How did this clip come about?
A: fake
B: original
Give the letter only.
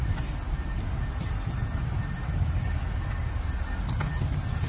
B